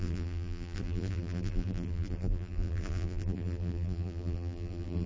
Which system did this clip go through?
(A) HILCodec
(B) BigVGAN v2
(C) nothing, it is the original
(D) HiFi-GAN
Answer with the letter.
B